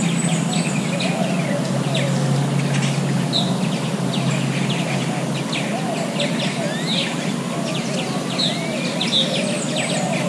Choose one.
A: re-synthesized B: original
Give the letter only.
B